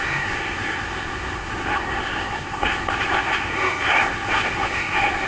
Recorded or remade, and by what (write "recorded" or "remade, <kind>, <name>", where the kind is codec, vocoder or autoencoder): remade, codec, SNAC